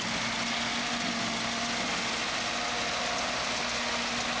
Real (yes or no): yes